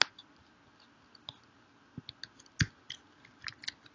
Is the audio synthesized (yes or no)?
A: no